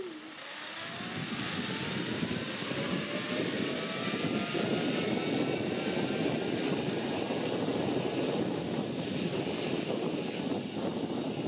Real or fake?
real